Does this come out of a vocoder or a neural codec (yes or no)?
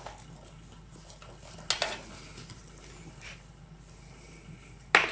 no